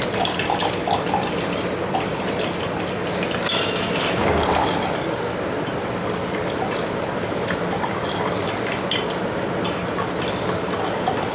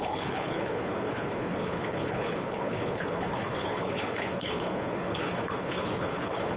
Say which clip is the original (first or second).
first